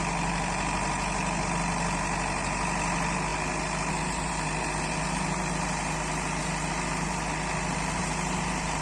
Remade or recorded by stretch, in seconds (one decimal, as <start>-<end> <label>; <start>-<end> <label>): 0.0-8.8 recorded